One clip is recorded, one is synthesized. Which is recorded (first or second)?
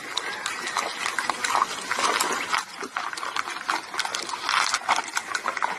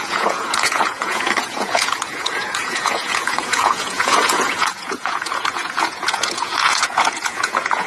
first